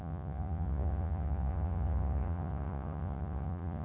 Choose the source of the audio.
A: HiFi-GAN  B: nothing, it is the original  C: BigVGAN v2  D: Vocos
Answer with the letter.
D